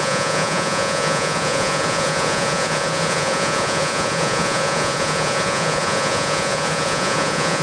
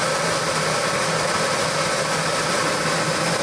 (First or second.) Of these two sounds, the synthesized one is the first